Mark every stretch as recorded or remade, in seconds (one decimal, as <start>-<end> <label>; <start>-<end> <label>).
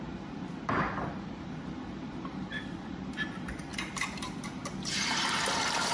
0.0-5.9 remade